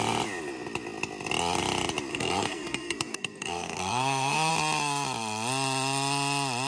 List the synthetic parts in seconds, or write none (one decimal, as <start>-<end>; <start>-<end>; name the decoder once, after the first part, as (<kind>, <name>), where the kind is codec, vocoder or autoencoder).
2.1-4.5 (codec, SNAC)